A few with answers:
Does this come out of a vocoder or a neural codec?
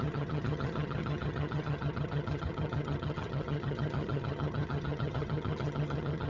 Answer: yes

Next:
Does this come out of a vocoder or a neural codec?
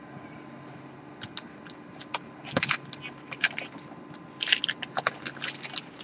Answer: no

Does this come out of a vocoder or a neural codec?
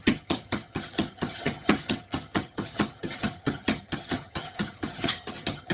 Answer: yes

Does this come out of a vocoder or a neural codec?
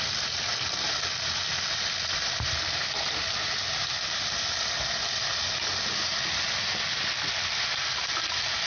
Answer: no